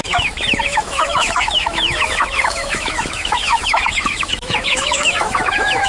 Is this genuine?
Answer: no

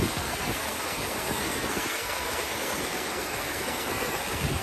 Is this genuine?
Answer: no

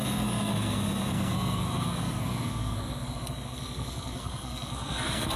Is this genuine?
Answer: no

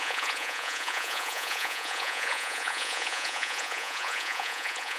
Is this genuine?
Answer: no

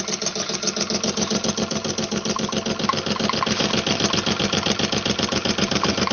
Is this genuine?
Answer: yes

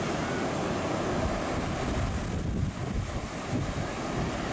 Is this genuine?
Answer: yes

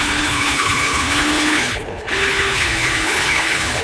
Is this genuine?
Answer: no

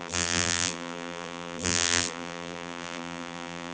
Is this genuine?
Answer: no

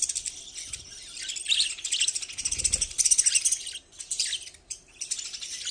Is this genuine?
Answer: yes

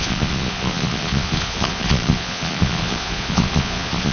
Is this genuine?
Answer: no